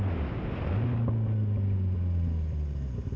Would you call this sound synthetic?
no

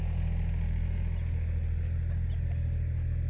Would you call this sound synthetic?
no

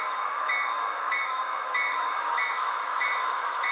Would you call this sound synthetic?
yes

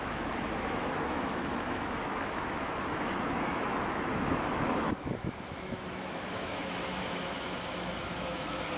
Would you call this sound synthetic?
yes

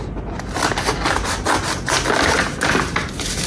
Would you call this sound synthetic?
no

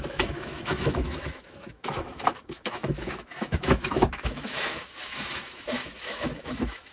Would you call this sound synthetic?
yes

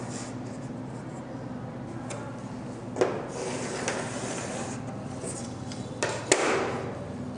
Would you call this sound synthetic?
no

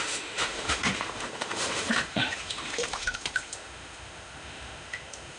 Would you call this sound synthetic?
yes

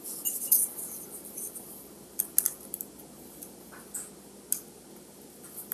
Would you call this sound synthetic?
no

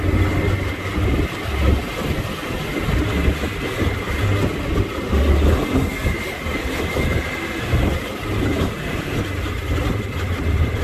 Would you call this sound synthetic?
no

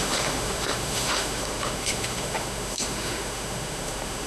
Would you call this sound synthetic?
yes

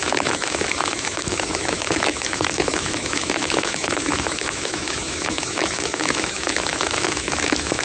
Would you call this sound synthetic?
yes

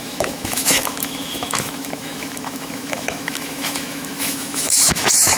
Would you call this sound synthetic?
yes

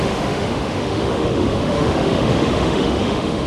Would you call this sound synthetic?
yes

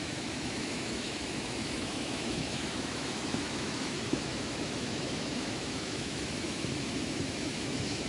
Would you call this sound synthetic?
yes